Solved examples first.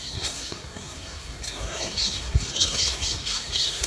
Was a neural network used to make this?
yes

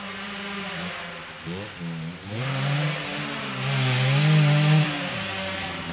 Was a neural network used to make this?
no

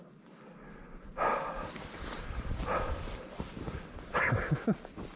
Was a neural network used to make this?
yes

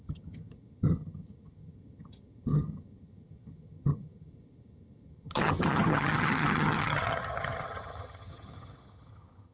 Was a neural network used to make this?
yes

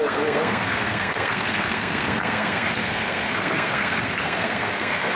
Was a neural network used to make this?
yes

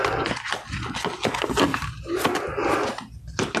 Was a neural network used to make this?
no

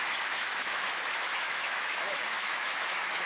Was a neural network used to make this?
yes